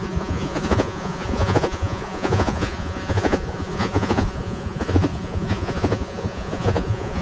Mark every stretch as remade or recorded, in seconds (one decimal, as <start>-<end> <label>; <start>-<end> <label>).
0.0-7.2 remade